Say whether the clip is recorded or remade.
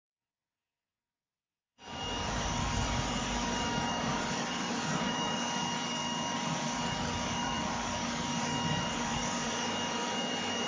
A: remade